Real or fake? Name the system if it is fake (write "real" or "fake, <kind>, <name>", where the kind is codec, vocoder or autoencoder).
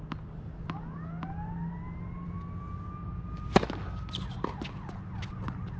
real